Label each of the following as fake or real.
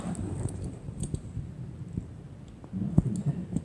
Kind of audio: real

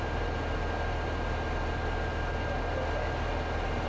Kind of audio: real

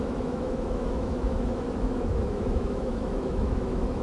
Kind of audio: fake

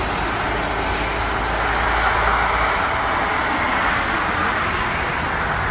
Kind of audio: real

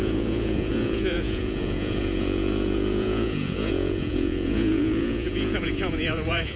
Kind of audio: fake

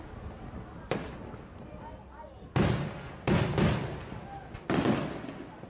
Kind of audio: real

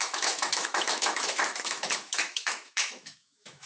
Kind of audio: fake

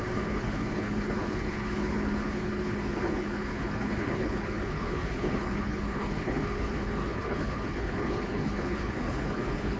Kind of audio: fake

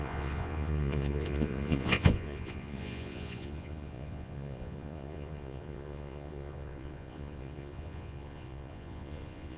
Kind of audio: fake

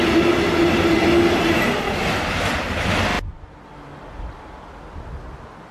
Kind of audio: real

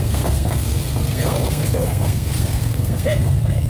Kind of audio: fake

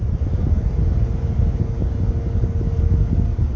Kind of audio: real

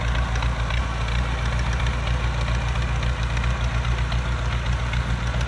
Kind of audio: real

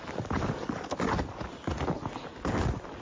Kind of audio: real